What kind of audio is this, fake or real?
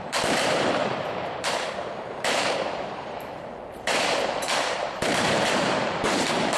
fake